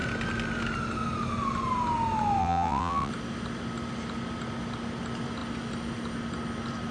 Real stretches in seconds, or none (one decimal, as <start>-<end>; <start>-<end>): 0.0-2.4; 3.1-6.9

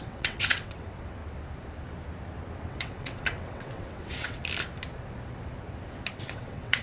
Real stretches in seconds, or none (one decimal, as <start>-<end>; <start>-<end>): 1.2-2.6; 4.4-6.1

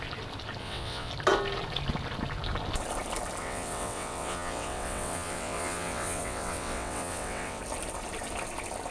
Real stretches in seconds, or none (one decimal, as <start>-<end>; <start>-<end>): 0.0-0.6; 1.1-3.4; 7.6-8.9

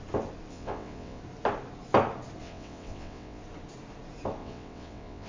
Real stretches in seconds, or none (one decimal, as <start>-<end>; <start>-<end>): 0.0-0.5; 1.2-2.4; 3.4-4.4

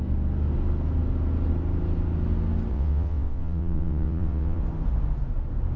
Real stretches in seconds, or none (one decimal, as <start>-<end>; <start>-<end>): 0.0-2.7; 4.6-5.8